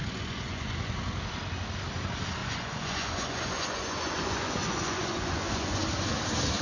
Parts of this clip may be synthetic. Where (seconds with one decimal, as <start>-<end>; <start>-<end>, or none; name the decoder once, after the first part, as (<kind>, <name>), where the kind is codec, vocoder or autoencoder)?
0.0-1.2 (vocoder, Vocos); 2.4-5.8